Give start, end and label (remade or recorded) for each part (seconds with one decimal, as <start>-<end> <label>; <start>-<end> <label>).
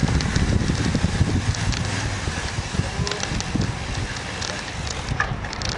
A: 0.0-5.8 recorded